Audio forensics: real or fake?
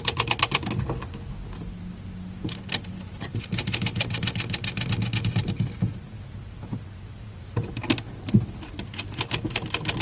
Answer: real